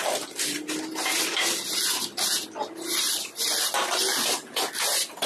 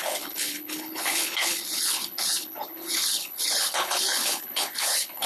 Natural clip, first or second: first